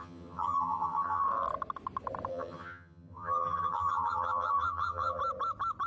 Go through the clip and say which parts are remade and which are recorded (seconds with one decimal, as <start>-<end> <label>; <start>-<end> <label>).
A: 0.0-1.2 remade; 1.2-2.3 recorded; 2.3-5.2 remade; 5.2-5.9 recorded